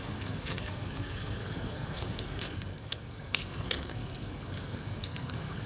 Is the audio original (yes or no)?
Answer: no